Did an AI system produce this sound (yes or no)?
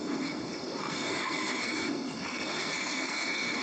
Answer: yes